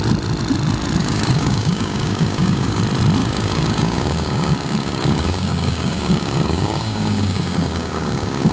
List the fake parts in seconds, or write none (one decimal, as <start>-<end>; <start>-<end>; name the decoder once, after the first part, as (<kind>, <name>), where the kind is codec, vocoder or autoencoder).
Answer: 1.0-2.8 (codec, DAC); 3.2-8.5